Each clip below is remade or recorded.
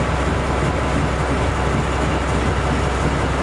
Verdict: recorded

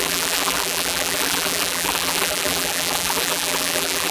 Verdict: remade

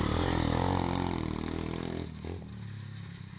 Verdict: recorded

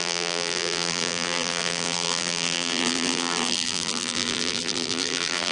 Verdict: remade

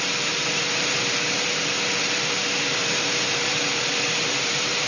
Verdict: remade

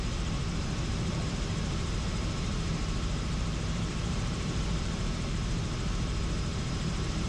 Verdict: remade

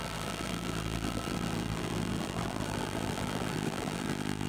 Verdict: remade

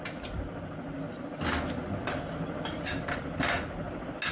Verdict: recorded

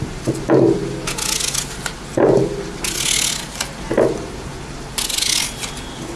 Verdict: recorded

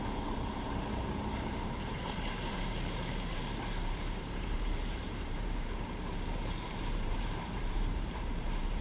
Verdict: remade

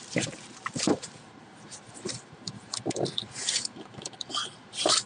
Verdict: remade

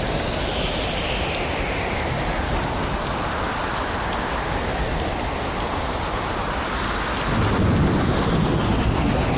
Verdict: recorded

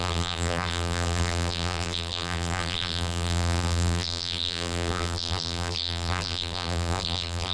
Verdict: remade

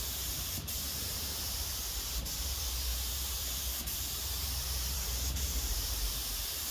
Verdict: remade